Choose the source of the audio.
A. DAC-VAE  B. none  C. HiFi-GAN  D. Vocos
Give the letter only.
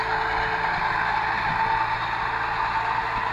B